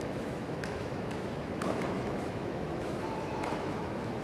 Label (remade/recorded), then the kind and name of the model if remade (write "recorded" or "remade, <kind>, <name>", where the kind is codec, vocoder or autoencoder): remade, autoencoder, DAC-VAE